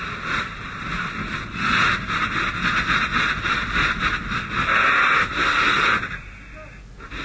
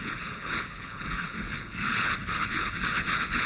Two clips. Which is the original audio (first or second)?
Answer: first